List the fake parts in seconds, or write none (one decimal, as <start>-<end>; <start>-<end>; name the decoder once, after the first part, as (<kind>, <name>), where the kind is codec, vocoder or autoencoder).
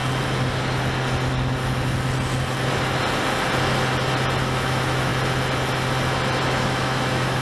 4.4-5.1 (autoencoder, DAC-VAE); 6.4-7.4